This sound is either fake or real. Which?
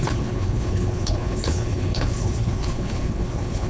fake